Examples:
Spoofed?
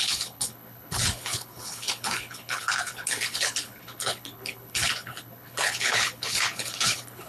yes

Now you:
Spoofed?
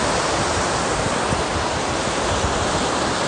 no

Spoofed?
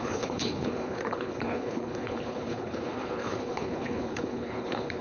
yes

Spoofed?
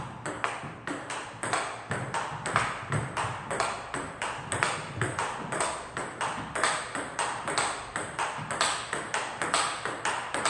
no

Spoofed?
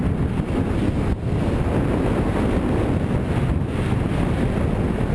no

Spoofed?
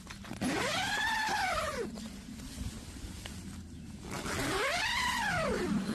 no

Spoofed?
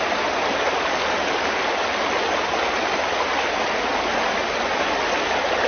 no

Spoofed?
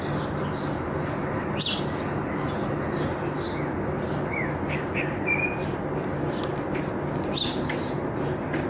no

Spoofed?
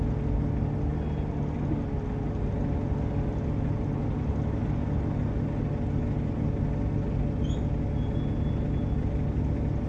no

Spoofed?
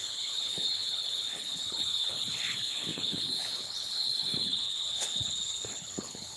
yes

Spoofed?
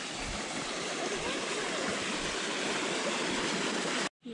no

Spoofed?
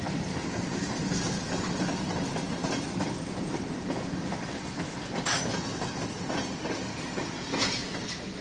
no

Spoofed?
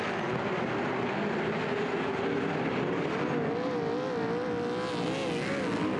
no